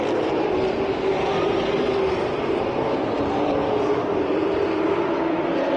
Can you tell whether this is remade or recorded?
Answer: remade